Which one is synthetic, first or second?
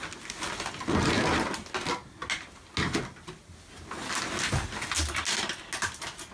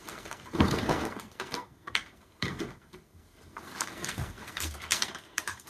second